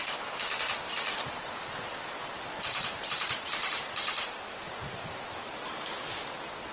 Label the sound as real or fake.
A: real